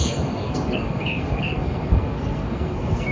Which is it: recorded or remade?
remade